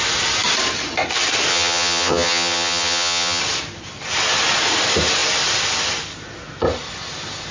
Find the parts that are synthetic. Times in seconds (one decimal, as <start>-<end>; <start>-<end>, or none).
1.5-3.4